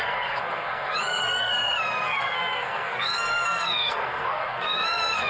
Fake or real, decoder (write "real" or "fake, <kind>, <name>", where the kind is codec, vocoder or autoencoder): fake, codec, SNAC